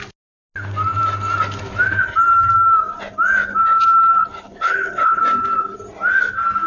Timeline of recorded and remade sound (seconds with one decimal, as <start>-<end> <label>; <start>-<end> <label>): 0.0-4.2 recorded; 4.2-5.2 remade; 5.2-6.7 recorded